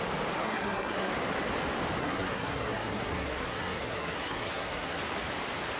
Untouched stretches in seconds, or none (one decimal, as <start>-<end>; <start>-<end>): 0.0-0.4; 1.1-2.0; 5.0-5.8